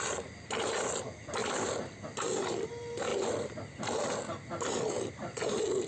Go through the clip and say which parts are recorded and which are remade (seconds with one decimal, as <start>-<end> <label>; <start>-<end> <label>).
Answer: 0.0-1.4 recorded; 1.4-2.4 remade; 2.4-5.9 recorded